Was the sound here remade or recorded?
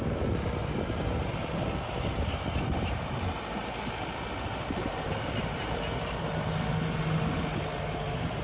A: recorded